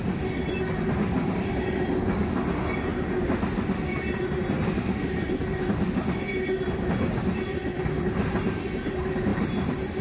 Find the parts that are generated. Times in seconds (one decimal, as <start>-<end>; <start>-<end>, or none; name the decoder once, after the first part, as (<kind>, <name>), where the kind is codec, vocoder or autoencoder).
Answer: none